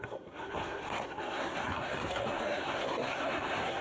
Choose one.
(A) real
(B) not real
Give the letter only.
B